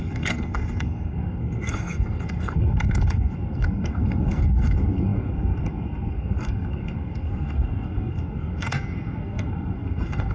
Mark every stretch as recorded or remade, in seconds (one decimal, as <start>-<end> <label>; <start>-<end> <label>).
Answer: 0.0-10.3 remade